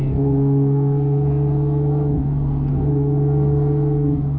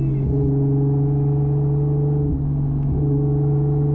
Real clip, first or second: second